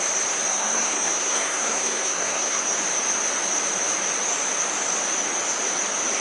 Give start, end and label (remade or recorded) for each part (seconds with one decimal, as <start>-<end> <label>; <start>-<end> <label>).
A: 0.0-0.5 recorded; 0.5-2.6 remade; 2.6-6.2 recorded

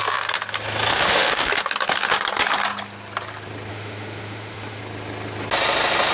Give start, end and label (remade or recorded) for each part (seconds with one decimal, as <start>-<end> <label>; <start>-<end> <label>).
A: 0.0-0.9 recorded; 0.9-1.5 remade; 1.5-3.7 recorded; 3.7-4.8 remade; 4.8-6.1 recorded

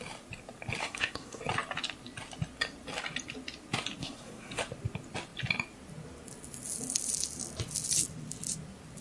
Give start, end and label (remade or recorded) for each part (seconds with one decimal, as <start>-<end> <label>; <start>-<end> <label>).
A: 0.0-0.8 recorded; 0.8-1.4 remade; 1.4-4.0 recorded; 4.0-4.6 remade; 4.6-9.0 recorded

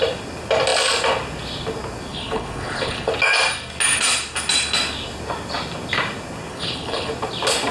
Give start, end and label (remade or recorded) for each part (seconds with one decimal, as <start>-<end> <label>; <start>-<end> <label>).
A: 0.0-2.1 recorded; 2.1-3.1 remade; 3.1-6.5 recorded; 6.5-7.1 remade; 7.1-7.7 recorded

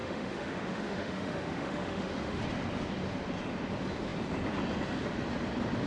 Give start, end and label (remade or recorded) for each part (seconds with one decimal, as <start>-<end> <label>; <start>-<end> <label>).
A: 0.0-2.4 remade; 2.4-5.9 recorded